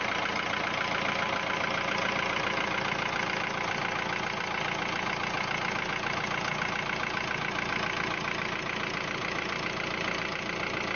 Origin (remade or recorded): recorded